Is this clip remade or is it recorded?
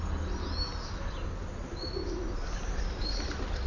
recorded